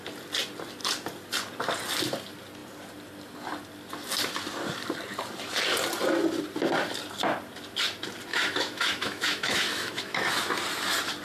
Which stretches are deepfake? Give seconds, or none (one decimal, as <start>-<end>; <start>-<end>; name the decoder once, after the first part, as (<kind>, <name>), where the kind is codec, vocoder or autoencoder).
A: 8.3-10.3 (autoencoder, DAC-VAE)

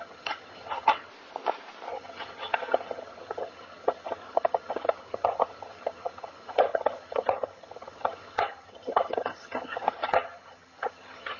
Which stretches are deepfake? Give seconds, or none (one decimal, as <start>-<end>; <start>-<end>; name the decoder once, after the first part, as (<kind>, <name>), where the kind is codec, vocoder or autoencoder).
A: 0.0-1.1 (vocoder, HiFi-GAN); 1.9-11.4

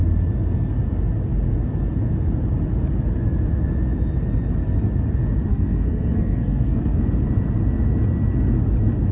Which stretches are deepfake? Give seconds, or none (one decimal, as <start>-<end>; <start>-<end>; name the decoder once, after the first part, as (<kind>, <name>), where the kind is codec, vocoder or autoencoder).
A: 5.5-7.0 (codec, SNAC)